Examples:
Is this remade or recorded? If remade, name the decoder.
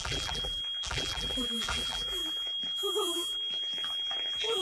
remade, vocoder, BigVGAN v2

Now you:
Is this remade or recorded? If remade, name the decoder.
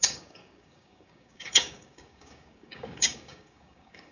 remade, codec, DAC